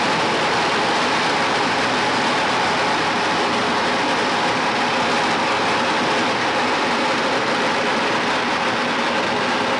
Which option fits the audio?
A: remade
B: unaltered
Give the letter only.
B